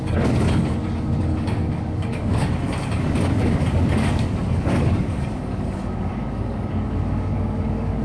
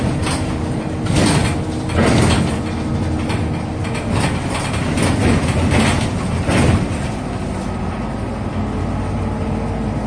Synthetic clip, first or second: first